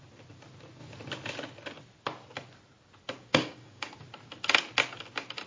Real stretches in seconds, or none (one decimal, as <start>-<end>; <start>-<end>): 0.0-3.3; 3.9-5.5